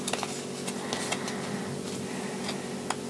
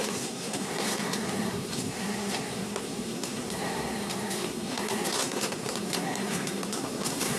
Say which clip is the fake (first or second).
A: second